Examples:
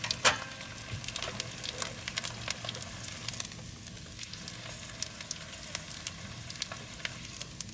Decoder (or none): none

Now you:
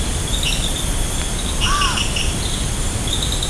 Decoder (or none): none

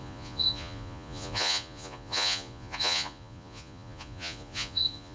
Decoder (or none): vocoder, Vocos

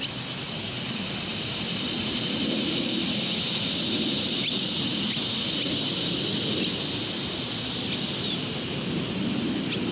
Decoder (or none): none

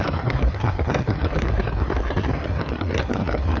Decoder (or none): codec, SNAC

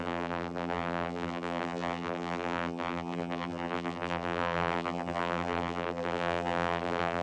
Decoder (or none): vocoder, BigVGAN v2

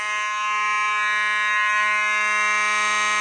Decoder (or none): none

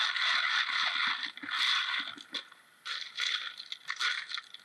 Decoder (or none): none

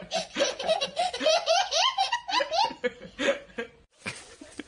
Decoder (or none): vocoder, Vocos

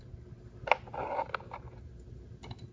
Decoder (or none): none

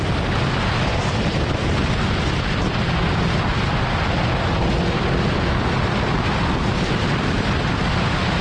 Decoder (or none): none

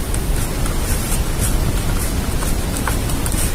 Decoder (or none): none